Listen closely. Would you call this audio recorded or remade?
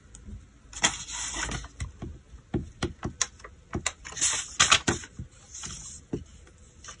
recorded